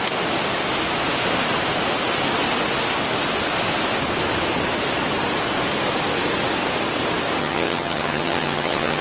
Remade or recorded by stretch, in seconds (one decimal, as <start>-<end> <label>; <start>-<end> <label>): 0.0-7.4 recorded; 7.4-9.0 remade